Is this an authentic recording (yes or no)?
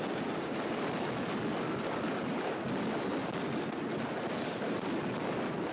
yes